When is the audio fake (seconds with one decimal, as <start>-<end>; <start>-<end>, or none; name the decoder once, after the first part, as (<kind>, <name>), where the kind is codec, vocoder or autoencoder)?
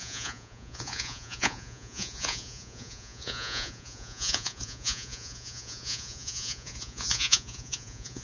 0.0-8.2 (vocoder, Vocos)